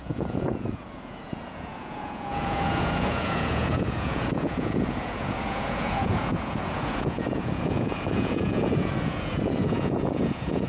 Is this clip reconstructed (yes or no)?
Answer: yes